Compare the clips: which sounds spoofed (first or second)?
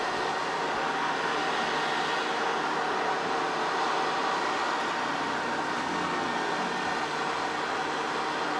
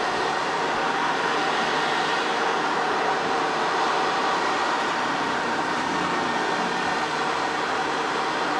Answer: second